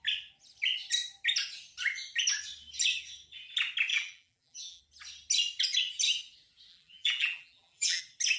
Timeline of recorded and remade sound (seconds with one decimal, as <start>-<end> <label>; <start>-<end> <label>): 0.0-3.9 recorded; 3.9-4.8 remade; 4.8-6.7 recorded; 6.7-8.0 remade; 8.0-8.4 recorded